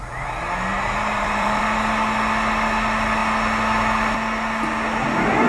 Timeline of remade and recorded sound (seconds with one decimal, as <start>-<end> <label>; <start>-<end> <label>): 0.0-0.7 recorded; 0.7-1.6 remade; 1.6-5.5 recorded